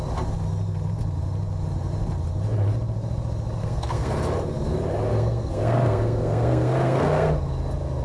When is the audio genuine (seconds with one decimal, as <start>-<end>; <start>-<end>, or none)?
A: 0.0-3.6; 4.1-5.1; 7.3-8.0

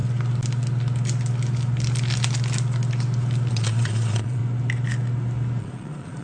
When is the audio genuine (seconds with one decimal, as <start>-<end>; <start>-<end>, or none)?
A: 0.0-3.5; 4.4-5.6

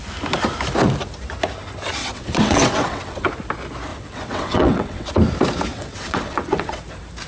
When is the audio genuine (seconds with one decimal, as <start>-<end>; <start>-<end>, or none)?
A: 0.0-2.0; 3.3-3.9; 5.1-5.7; 6.8-7.3

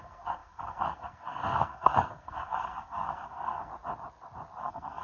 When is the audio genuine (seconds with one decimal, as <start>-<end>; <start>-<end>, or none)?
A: 3.7-4.6

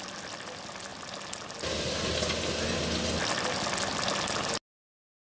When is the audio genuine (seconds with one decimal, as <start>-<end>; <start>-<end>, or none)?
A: 0.0-5.2

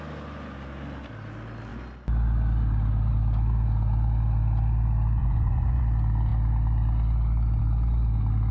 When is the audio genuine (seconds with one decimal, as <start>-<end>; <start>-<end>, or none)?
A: 0.0-5.2; 5.8-8.5

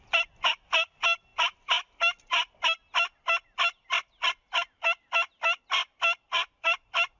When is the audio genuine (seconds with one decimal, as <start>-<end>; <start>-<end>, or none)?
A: 0.0-7.2